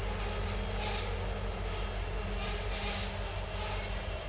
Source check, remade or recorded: recorded